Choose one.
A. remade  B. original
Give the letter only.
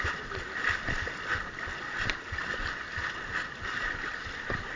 B